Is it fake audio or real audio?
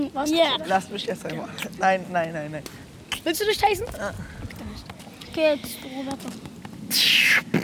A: real